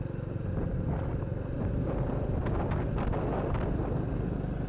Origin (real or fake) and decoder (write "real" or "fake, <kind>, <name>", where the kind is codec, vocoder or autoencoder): real